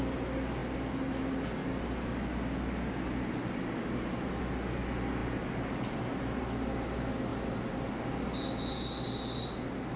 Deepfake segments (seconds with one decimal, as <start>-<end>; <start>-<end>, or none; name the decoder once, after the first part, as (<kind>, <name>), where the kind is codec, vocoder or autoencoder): none